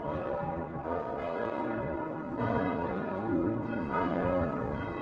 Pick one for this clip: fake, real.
fake